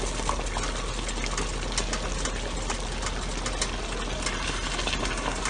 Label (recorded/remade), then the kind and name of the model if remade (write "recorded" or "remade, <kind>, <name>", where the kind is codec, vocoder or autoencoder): recorded